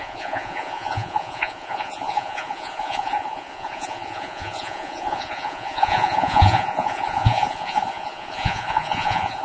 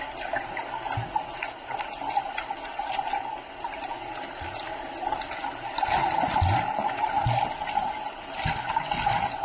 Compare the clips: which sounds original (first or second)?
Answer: second